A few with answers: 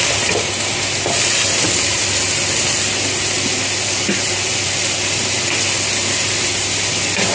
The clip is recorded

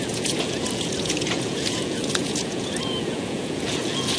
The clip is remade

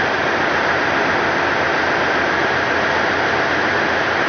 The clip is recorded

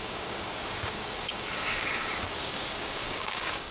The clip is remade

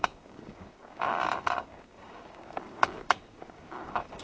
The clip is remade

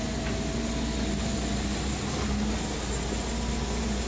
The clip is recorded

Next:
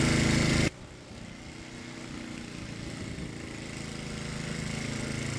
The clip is recorded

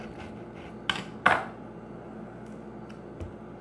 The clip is recorded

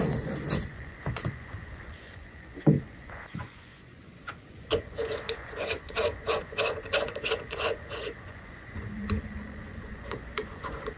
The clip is remade